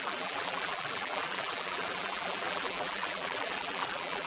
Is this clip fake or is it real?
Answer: fake